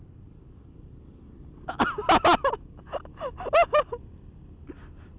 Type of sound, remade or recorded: recorded